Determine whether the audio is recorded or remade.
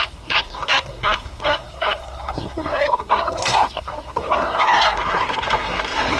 remade